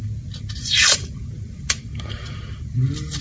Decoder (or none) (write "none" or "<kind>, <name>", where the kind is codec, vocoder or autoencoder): vocoder, BigVGAN v2